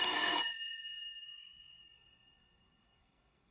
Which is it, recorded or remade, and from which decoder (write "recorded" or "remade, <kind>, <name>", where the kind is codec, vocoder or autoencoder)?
remade, codec, SNAC